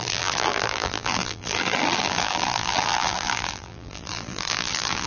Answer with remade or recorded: remade